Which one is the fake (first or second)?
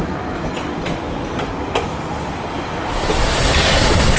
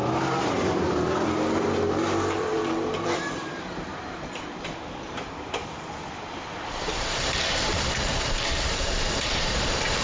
second